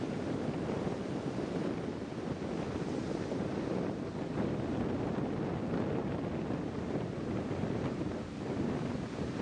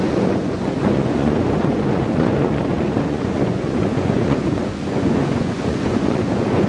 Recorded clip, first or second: first